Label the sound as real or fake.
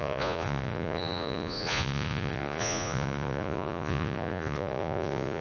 fake